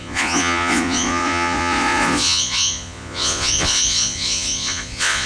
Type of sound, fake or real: fake